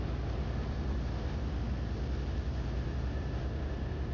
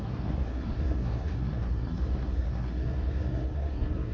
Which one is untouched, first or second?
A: first